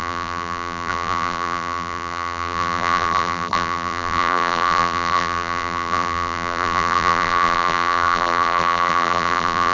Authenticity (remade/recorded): remade